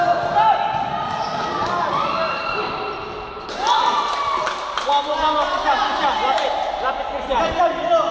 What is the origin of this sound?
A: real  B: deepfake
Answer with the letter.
A